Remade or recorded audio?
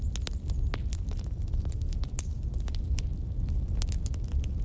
recorded